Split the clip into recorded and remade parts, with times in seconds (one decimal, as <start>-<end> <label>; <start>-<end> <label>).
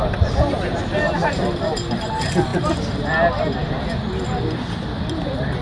0.0-5.6 recorded